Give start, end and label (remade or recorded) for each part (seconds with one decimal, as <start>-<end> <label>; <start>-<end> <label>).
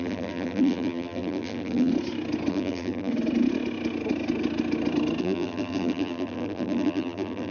0.0-1.9 remade; 1.9-2.5 recorded; 2.5-3.1 remade; 3.1-5.2 recorded; 5.2-7.5 remade